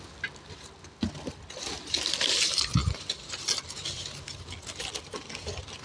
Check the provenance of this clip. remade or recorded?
recorded